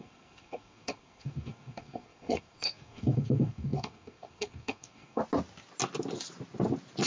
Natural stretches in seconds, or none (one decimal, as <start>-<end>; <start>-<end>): 5.2-7.1